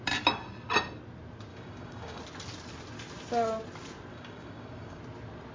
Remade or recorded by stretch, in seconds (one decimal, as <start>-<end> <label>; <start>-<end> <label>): 0.0-1.5 recorded; 1.5-2.2 remade; 2.2-4.1 recorded; 4.1-5.0 remade; 5.0-5.5 recorded